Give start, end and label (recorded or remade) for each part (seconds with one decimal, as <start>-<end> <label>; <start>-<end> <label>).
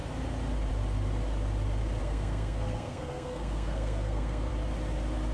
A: 0.0-2.0 recorded; 2.0-4.5 remade; 4.5-5.3 recorded